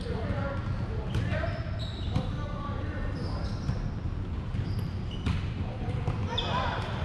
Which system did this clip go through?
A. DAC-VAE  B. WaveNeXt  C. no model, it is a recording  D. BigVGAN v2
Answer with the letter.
C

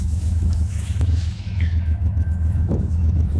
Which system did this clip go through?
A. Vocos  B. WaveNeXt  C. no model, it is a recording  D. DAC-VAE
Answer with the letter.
D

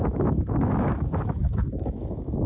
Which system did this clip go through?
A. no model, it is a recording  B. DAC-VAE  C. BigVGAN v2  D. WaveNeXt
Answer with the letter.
B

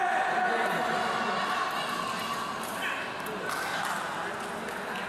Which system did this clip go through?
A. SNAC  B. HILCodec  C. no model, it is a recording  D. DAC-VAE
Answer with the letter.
C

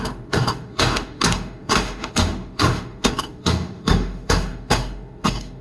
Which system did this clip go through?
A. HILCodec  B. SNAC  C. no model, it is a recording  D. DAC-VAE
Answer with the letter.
D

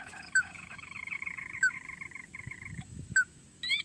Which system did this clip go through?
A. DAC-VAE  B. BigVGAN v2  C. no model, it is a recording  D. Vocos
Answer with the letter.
A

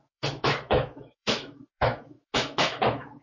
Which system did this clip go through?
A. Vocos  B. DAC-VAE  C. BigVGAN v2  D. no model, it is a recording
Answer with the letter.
B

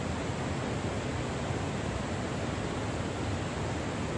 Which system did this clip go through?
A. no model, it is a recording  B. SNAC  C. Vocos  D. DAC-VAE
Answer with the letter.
A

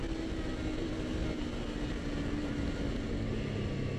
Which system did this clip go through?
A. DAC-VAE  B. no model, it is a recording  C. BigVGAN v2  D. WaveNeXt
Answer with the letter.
B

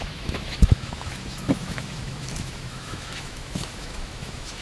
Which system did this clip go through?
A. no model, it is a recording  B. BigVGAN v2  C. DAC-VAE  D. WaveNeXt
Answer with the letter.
C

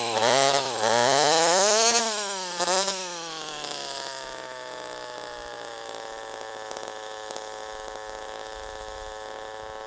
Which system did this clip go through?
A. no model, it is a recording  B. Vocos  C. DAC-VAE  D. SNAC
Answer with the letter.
C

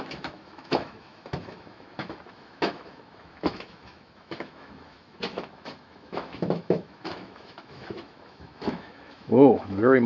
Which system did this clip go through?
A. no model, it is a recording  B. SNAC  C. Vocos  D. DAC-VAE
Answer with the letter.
D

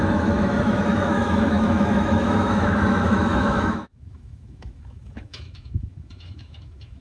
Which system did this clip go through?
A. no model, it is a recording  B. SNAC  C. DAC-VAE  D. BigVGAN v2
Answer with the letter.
C